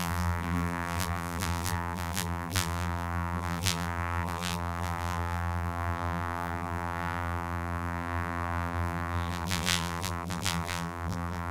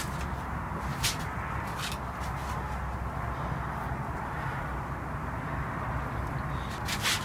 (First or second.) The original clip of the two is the second